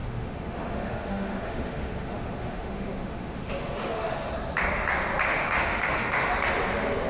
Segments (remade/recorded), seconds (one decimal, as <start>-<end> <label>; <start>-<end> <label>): 0.0-4.3 remade; 4.3-5.3 recorded; 5.3-6.3 remade; 6.3-7.1 recorded